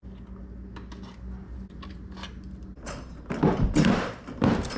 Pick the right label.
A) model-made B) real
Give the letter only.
B